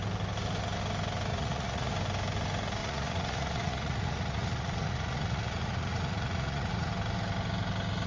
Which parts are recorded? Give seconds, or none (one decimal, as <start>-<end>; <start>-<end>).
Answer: 0.0-1.3; 1.9-2.8; 6.9-8.1